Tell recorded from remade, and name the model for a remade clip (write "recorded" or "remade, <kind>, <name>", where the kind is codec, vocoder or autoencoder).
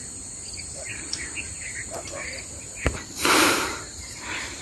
remade, vocoder, BigVGAN v2